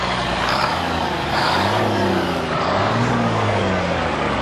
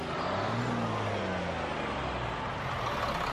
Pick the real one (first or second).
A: second